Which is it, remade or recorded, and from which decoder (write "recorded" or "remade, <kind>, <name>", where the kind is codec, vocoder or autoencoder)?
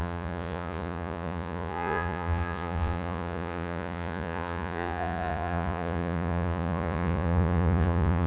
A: remade, vocoder, Vocos